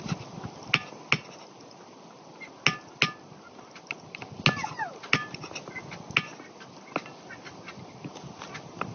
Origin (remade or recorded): recorded